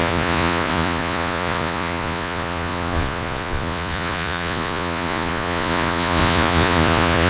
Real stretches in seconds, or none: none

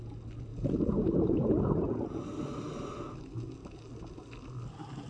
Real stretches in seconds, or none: 0.0-0.5; 2.2-5.1

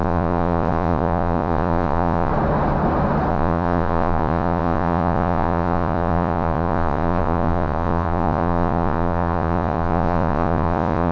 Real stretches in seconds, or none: 2.3-3.3

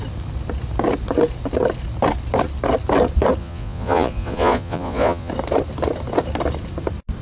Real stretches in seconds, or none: 0.0-3.4; 5.3-7.2

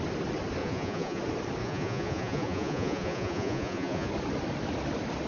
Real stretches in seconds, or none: 0.0-0.6; 1.2-1.6; 4.1-5.3

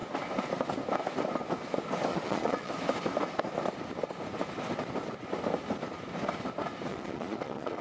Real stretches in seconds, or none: 0.0-2.1; 2.7-6.9

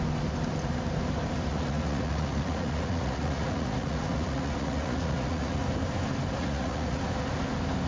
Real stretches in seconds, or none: 0.0-1.5; 5.6-6.4; 7.0-7.9

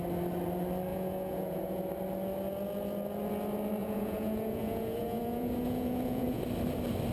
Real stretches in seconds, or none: 0.0-0.9; 1.9-3.8; 6.4-7.1